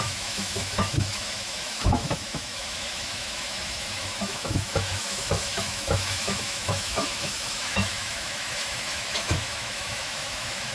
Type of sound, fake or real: fake